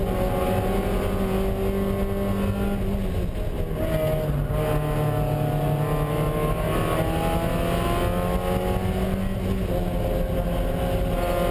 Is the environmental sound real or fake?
real